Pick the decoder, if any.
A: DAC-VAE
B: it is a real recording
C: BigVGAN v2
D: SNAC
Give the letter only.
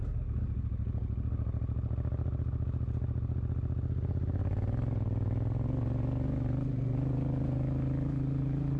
B